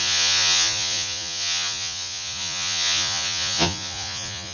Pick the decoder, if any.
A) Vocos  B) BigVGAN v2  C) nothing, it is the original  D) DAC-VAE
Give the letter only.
A